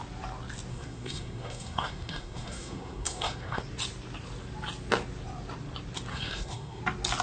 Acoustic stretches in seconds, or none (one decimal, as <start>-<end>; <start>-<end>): 0.0-0.7; 3.6-6.1; 6.8-7.2